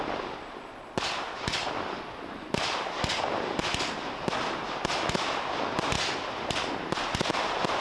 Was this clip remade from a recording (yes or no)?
no